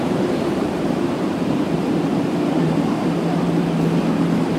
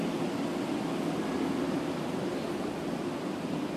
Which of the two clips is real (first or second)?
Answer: second